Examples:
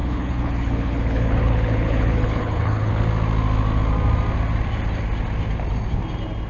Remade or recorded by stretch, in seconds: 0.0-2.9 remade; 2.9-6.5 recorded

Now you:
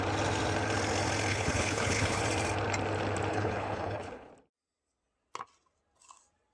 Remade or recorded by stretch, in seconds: 0.0-1.3 recorded; 1.3-2.2 remade; 2.2-3.3 recorded; 3.3-4.3 remade; 4.3-6.5 recorded

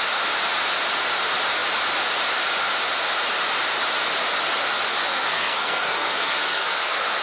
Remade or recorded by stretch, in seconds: 0.0-4.9 recorded; 4.9-7.2 remade

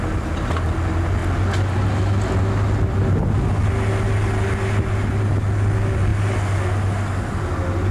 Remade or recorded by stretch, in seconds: 0.0-7.9 recorded